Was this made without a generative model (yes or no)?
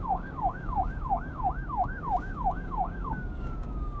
no